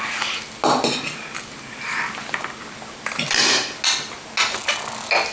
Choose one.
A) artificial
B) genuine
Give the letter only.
B